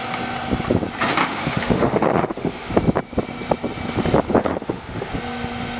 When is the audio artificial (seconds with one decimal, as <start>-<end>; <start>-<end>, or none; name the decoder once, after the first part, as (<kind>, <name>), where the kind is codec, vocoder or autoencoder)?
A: 1.2-2.7 (autoencoder, DAC-VAE); 4.4-5.1